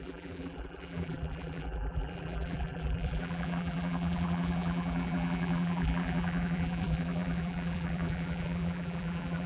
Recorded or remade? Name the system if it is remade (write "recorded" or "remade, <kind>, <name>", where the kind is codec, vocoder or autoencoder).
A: remade, vocoder, BigVGAN v2